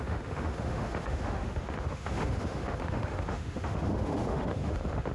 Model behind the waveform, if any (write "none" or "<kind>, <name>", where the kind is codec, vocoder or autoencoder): autoencoder, DAC-VAE